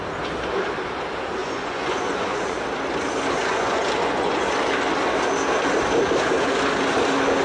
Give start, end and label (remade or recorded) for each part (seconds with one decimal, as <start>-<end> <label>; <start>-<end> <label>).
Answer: 0.0-1.4 recorded; 1.4-2.6 remade; 2.6-3.4 recorded; 3.4-4.5 remade; 4.5-7.4 recorded